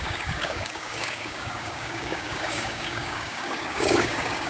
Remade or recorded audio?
remade